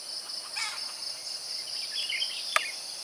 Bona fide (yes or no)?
yes